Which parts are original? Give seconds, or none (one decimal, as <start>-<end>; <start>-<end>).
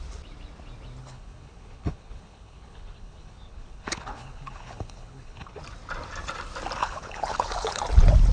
0.0-1.0; 5.6-6.8; 7.8-8.3